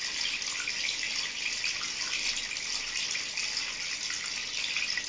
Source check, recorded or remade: recorded